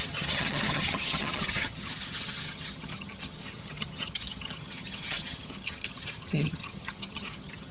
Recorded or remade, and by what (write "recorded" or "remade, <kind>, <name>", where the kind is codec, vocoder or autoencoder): remade, vocoder, HiFi-GAN